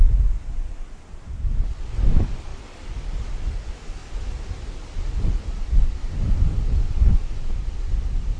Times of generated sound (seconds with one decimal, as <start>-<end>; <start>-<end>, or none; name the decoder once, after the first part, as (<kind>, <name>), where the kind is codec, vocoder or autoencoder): none